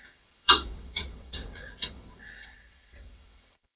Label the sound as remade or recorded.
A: remade